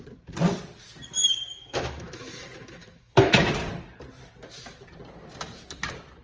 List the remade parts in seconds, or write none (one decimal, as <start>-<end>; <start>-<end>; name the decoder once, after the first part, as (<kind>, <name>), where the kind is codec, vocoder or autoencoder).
1.5-3.3 (autoencoder, DAC-VAE)